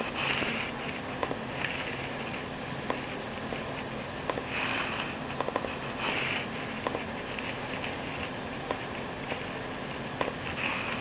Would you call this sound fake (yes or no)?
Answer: no